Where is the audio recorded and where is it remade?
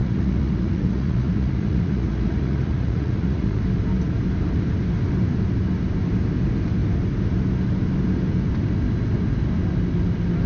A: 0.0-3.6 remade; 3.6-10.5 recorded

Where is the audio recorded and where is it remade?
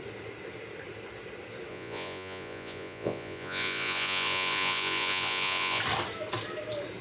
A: 0.0-1.7 recorded; 1.7-5.8 remade; 5.8-7.0 recorded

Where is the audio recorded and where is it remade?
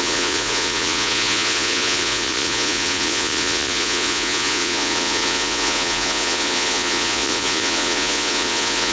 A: 0.0-8.9 remade